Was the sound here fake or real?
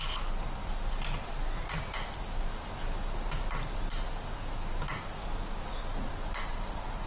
real